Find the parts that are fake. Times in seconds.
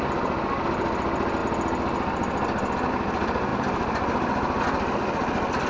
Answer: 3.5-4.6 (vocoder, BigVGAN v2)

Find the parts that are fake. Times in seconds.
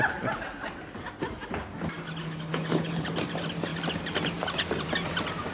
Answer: 2.2-3.1 (codec, HILCodec)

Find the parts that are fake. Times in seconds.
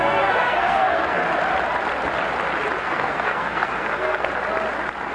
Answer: 0.0-1.2 (codec, SNAC); 2.8-4.3